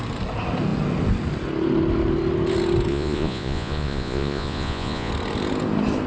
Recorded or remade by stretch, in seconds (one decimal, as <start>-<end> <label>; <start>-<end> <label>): 0.0-2.9 recorded; 2.9-5.1 remade; 5.1-6.1 recorded